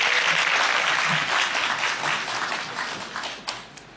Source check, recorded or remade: recorded